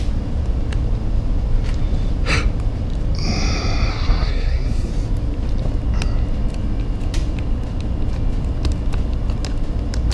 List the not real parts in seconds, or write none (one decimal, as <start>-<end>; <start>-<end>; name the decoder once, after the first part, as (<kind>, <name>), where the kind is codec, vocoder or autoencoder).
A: 3.9-4.9 (codec, SNAC)